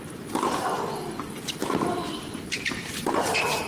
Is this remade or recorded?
recorded